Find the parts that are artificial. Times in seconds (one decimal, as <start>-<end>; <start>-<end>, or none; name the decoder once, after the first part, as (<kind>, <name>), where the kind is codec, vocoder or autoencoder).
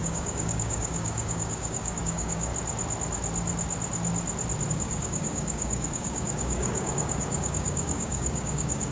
0.0-2.5 (codec, DAC); 4.7-8.9